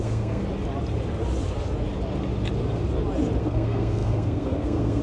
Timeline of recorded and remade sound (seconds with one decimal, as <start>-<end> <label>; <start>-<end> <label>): 0.0-0.4 remade; 0.4-3.4 recorded; 3.4-5.0 remade